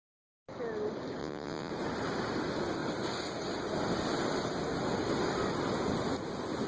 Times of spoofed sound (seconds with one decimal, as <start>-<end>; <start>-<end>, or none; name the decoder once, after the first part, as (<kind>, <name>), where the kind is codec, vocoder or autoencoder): 1.2-1.7 (vocoder, Vocos)